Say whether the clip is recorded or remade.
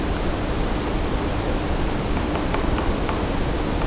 recorded